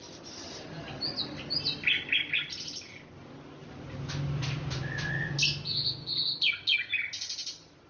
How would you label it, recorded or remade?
recorded